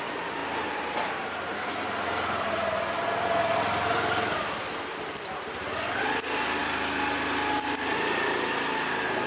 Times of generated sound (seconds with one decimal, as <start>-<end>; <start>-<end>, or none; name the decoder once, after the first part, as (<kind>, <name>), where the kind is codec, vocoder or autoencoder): none

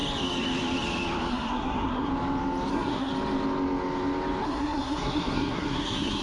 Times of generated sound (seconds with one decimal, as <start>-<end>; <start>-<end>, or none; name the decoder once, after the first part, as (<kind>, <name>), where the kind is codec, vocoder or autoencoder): 1.3-2.1 (codec, SNAC); 2.7-3.1; 4.4-6.2

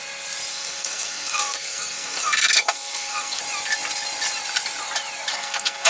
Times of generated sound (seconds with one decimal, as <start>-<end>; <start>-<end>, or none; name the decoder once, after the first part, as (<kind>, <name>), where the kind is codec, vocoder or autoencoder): 0.5-3.4 (codec, SNAC); 5.3-5.9

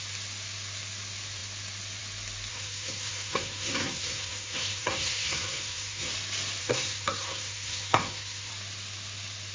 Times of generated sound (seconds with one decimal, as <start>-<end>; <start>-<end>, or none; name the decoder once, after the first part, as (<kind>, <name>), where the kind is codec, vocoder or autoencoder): 2.5-6.1 (codec, SNAC); 6.6-8.5

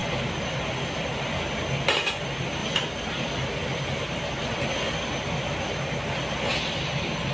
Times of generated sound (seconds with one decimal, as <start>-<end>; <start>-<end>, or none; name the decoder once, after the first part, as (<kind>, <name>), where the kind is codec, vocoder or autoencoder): none

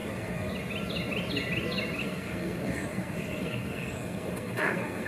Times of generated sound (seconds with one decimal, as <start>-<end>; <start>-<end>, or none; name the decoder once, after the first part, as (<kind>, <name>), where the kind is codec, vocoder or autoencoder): 0.0-0.5 (codec, SNAC); 2.0-5.1